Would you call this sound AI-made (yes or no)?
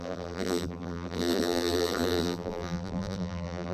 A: yes